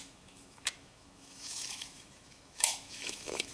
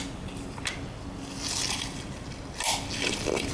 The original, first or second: second